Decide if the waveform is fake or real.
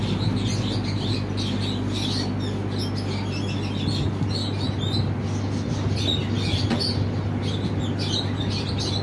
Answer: real